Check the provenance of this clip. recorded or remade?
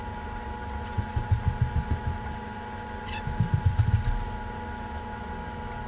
recorded